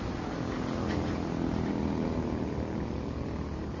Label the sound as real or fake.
real